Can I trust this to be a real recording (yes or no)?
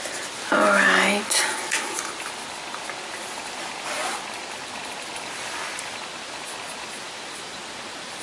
yes